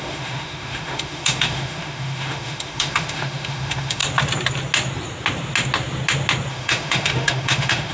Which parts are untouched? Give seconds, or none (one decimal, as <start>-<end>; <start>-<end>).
4.0-6.5